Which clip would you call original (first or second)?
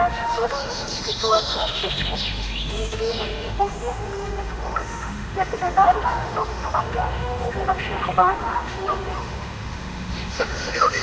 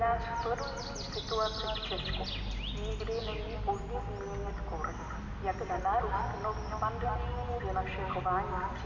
second